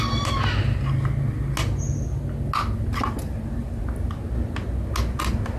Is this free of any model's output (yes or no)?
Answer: yes